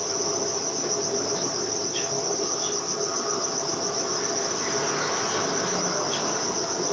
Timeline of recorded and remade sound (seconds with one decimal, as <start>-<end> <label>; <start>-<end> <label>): 0.0-6.9 recorded